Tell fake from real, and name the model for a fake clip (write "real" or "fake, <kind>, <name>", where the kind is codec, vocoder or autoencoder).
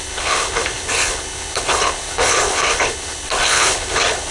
fake, codec, HILCodec